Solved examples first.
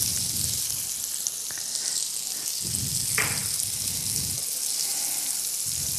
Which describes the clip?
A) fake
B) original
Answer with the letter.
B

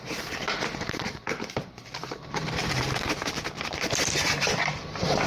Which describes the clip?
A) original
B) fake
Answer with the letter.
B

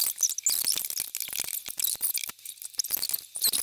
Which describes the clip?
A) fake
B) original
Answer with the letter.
B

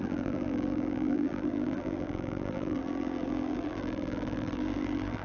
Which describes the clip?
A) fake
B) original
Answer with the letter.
A